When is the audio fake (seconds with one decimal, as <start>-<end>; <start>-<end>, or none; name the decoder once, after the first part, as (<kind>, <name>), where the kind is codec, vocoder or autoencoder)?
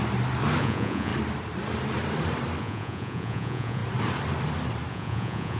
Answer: 0.6-1.1 (vocoder, Vocos); 2.6-3.8; 4.9-5.6